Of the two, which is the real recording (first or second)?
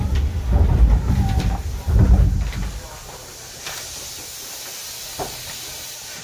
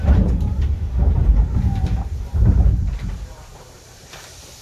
first